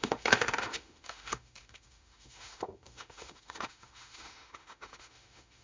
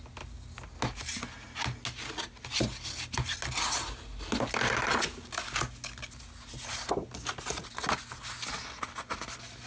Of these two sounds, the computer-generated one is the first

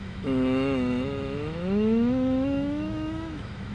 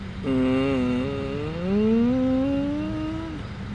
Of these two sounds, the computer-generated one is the first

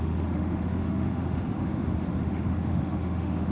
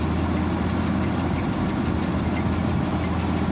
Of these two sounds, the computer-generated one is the first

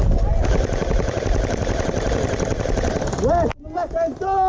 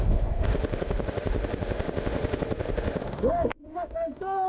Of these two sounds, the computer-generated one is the second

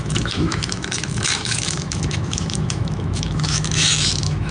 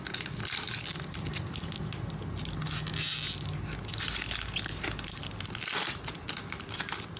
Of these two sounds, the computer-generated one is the first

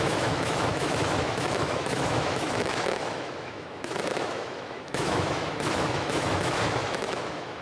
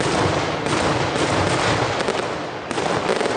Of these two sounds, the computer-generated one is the first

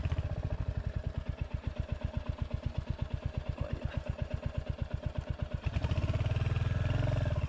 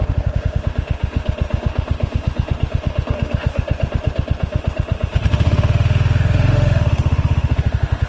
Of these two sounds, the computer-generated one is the second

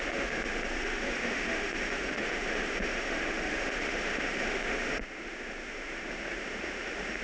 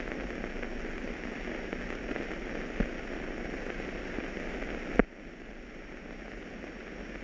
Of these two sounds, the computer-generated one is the first